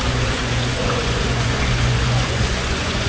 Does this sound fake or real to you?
fake